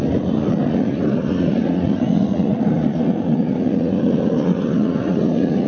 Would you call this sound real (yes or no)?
no